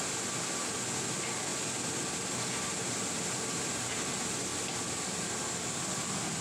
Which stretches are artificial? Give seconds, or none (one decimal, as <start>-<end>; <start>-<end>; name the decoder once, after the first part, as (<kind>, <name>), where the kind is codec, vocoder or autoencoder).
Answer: none